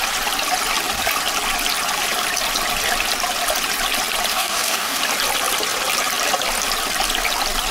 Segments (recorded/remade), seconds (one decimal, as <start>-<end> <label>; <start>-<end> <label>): 0.0-4.3 recorded; 4.3-5.0 remade; 5.0-7.7 recorded